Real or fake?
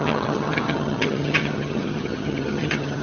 fake